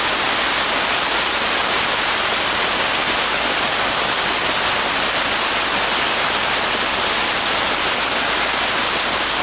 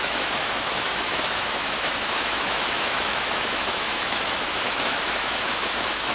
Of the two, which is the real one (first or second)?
first